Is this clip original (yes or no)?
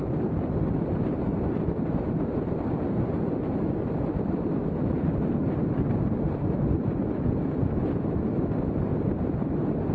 yes